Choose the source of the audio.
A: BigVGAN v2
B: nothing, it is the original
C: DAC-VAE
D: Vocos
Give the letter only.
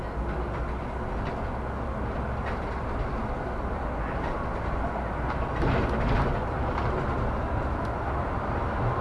B